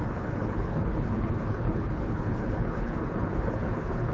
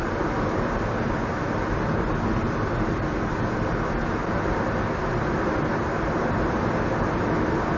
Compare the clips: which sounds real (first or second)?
second